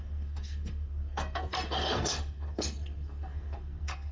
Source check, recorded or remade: remade